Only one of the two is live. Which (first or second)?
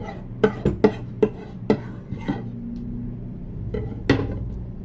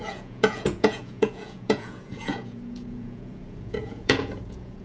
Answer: first